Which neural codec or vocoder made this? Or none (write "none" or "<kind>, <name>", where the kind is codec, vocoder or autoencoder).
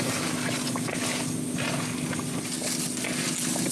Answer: none